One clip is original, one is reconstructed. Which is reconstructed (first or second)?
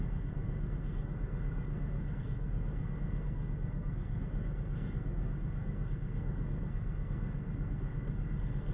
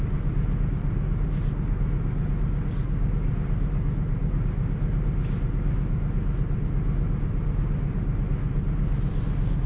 first